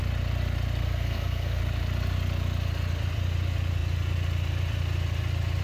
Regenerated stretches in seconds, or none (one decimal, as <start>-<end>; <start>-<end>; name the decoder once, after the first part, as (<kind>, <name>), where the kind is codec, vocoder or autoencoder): 0.8-1.6 (codec, SNAC)